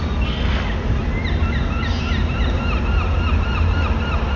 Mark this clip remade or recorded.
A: recorded